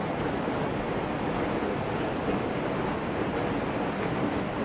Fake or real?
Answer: real